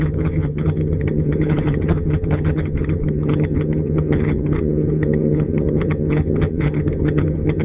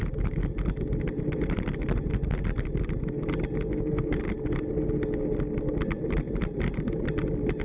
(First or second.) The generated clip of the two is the first